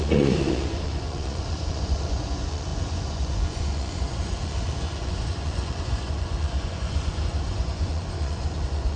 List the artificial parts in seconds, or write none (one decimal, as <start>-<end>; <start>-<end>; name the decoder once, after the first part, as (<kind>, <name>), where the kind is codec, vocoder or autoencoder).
0.0-9.0 (vocoder, Vocos)